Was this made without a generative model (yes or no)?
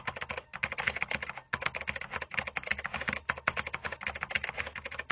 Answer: yes